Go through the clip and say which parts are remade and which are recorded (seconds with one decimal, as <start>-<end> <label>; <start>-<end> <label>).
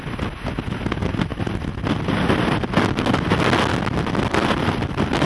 0.0-5.3 recorded